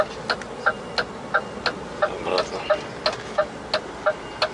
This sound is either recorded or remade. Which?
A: recorded